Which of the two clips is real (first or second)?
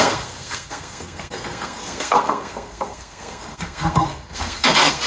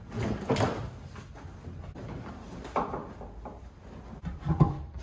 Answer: second